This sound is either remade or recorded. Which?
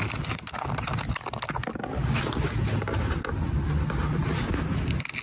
recorded